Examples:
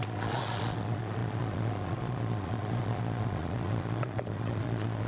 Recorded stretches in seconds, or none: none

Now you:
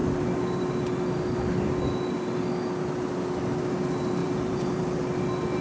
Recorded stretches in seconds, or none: 0.0-4.2; 4.8-5.6

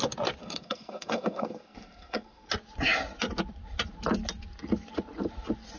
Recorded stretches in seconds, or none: 0.0-0.4; 2.5-5.8

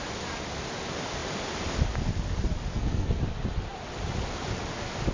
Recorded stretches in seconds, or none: 0.0-2.7; 3.2-5.1